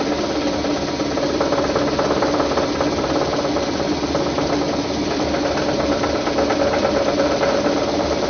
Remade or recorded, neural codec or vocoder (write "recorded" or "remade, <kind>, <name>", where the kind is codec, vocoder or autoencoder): recorded